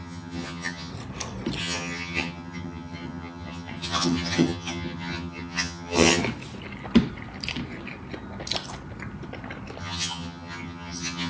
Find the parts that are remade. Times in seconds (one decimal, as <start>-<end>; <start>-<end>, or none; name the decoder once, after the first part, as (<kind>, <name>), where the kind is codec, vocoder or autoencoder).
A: 0.0-0.9 (vocoder, HiFi-GAN); 1.6-6.2; 9.8-11.3